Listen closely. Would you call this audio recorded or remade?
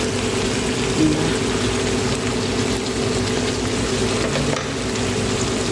recorded